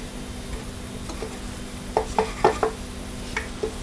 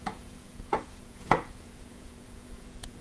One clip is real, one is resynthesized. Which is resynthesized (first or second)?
second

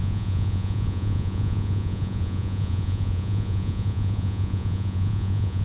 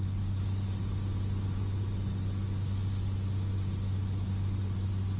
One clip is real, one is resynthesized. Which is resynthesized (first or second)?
first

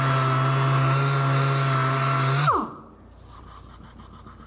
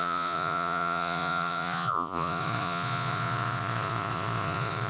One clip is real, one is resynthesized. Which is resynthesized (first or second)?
second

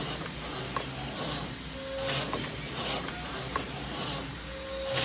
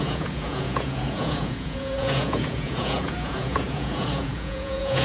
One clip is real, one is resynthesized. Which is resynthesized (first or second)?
second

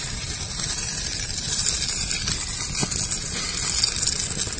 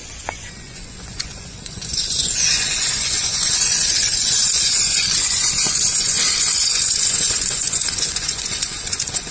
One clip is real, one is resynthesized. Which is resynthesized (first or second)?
second